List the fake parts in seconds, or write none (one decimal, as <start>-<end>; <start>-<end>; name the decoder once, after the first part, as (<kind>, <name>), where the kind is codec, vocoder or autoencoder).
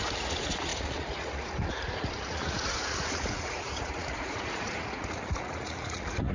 0.0-6.3 (vocoder, Vocos)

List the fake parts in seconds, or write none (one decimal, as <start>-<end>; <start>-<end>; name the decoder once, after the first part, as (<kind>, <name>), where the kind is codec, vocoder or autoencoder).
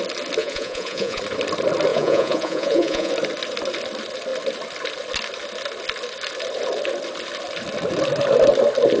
0.4-1.2 (vocoder, Vocos); 1.9-3.1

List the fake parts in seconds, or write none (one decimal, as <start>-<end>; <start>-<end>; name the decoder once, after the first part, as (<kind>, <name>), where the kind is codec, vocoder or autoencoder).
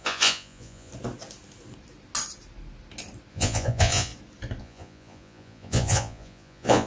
0.0-0.9 (vocoder, Vocos); 3.3-4.1; 4.6-6.9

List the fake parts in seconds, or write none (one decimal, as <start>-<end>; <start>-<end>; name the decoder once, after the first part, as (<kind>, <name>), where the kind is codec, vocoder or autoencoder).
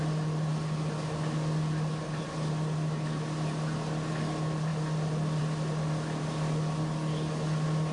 none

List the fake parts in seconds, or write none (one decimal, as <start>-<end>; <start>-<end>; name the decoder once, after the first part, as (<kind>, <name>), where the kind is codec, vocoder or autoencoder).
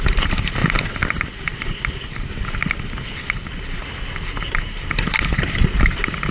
none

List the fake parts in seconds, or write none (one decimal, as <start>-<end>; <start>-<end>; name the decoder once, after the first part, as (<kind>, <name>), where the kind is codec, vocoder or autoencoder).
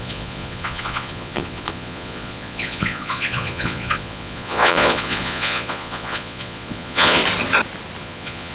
0.0-7.2 (vocoder, Vocos); 8.0-8.5